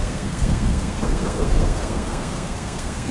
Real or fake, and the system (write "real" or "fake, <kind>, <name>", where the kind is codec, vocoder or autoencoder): fake, codec, SNAC